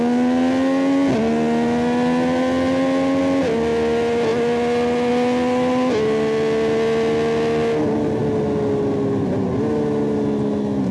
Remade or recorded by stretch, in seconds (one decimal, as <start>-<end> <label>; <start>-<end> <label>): 0.0-10.9 recorded